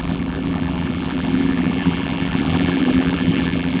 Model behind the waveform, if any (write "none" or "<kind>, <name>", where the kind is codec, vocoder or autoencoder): vocoder, BigVGAN v2